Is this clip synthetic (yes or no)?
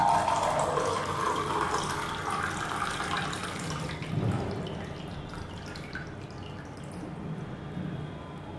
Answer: no